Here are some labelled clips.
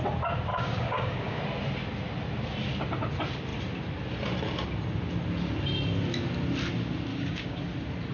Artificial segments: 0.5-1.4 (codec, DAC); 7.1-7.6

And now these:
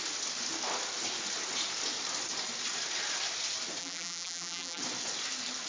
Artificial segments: 3.8-4.8 (vocoder, BigVGAN v2)